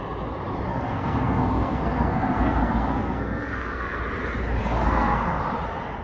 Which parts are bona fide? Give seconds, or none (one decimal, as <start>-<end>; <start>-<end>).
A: 0.0-0.7; 4.0-4.6; 5.4-6.0